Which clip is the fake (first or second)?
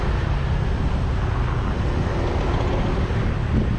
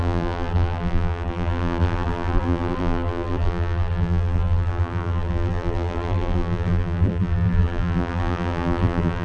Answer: second